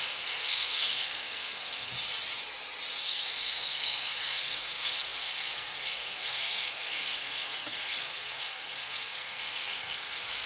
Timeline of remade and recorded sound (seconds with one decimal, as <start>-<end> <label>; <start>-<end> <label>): 0.0-1.9 remade; 1.9-3.0 recorded; 3.0-10.5 remade